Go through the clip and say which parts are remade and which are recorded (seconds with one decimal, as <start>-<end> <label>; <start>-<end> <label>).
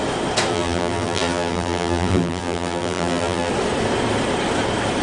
0.0-0.5 recorded; 0.5-3.5 remade; 3.5-5.0 recorded